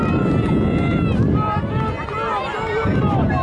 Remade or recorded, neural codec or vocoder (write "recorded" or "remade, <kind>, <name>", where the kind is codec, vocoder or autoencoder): recorded